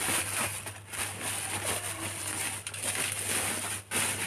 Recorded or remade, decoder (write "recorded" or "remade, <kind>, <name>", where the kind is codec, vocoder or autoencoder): remade, vocoder, BigVGAN v2